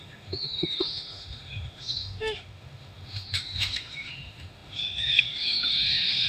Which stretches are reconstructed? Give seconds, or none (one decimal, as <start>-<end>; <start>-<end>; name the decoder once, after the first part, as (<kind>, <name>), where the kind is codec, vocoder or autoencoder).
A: 0.0-6.3 (autoencoder, DAC-VAE)